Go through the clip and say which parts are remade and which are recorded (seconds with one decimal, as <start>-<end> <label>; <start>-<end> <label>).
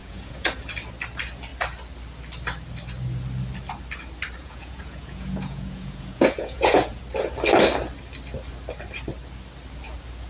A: 0.0-0.6 remade; 0.6-4.4 recorded; 4.4-7.0 remade; 7.0-10.3 recorded